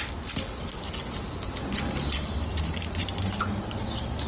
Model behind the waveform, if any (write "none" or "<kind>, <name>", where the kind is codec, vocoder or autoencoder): none